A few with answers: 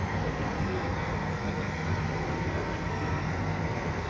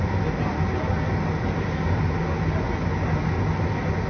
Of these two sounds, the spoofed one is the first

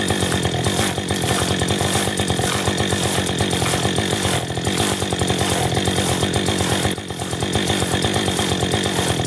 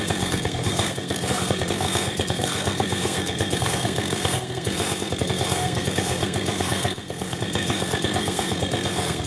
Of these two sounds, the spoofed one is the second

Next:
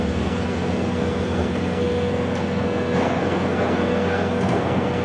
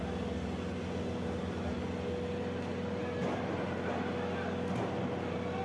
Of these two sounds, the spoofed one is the first